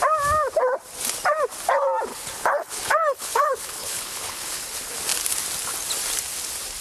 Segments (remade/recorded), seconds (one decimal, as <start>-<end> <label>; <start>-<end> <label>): 0.0-2.1 recorded; 2.1-4.6 remade; 4.6-6.8 recorded